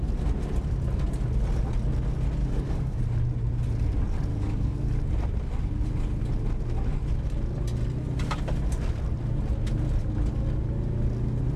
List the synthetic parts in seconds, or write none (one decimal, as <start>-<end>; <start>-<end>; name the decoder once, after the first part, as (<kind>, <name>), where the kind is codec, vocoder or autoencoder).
2.4-3.0 (codec, DAC); 4.3-4.9